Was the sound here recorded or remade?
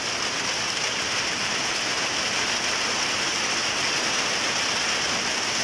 recorded